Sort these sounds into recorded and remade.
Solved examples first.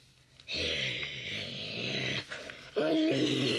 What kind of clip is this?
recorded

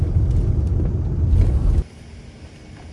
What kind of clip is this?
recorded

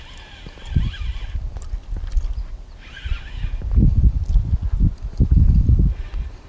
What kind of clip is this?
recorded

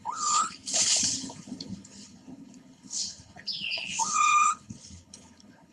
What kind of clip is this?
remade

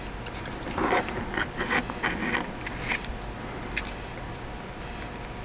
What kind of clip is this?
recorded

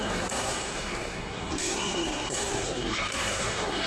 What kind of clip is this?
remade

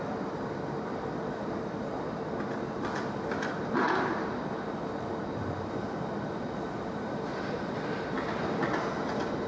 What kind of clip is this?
recorded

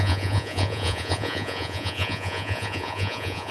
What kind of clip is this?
remade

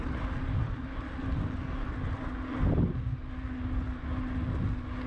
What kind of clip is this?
recorded